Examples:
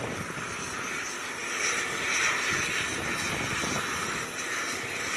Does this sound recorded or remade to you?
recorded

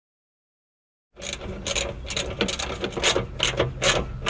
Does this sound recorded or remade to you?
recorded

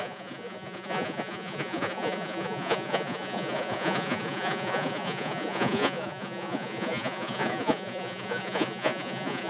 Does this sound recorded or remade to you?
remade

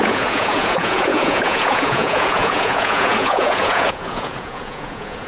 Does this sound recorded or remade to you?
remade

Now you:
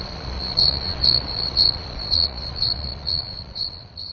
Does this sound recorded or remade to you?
remade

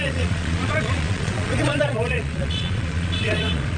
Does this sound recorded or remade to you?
remade